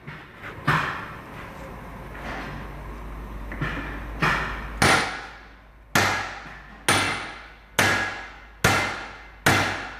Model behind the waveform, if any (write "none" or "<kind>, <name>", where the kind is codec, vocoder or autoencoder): none